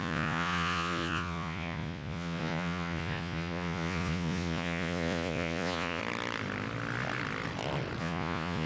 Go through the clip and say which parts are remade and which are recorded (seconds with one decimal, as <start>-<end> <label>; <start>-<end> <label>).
0.0-6.0 remade; 6.0-8.0 recorded; 8.0-8.7 remade